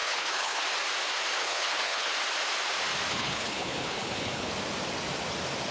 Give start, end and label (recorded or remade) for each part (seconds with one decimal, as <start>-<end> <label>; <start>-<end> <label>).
0.0-0.6 remade; 0.6-1.4 recorded; 1.4-2.1 remade; 2.1-3.1 recorded; 3.1-4.5 remade; 4.5-5.7 recorded